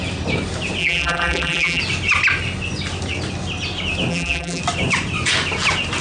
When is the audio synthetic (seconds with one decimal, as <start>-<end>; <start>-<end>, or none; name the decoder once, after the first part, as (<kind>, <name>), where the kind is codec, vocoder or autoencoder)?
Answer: 0.8-1.8 (vocoder, BigVGAN v2); 4.1-4.6